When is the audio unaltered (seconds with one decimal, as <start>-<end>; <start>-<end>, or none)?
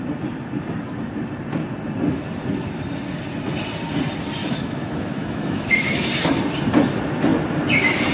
0.0-4.4; 6.1-8.1